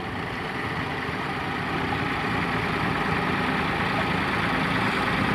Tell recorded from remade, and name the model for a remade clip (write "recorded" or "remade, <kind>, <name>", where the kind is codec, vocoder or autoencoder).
recorded